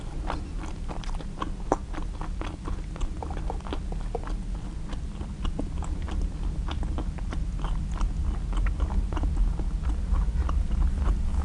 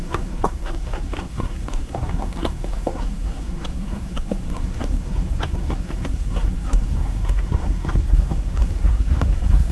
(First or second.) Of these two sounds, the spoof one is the second